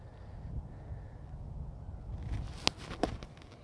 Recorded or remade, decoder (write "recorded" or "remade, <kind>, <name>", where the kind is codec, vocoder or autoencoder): recorded